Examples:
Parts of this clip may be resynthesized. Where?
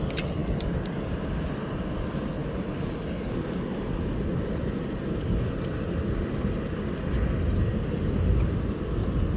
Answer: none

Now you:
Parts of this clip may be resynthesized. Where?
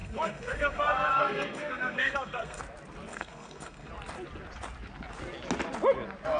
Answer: 0.0-2.6 (codec, SNAC); 3.1-3.9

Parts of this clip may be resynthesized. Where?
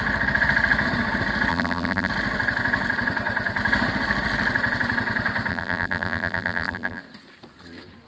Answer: 1.5-2.1 (vocoder, BigVGAN v2); 5.5-7.0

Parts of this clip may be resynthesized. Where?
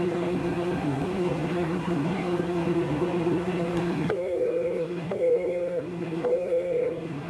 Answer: 0.0-7.3 (codec, SNAC)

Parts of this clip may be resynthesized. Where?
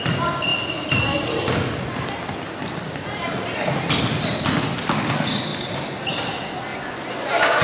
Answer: 6.7-7.6 (vocoder, Vocos)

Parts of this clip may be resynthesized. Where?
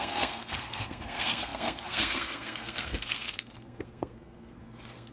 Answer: 0.0-5.1 (codec, SNAC)